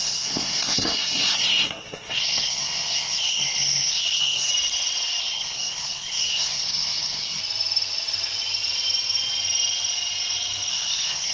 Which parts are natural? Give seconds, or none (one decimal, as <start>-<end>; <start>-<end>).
4.5-5.2; 7.4-10.7